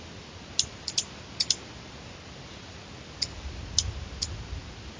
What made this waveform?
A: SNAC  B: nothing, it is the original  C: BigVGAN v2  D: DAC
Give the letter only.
B